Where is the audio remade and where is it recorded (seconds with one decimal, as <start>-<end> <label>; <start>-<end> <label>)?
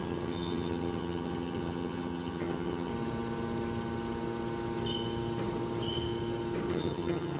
0.0-2.9 remade; 2.9-6.7 recorded; 6.7-7.4 remade